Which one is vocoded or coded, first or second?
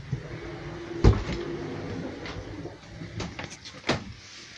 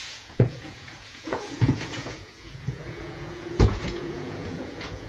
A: second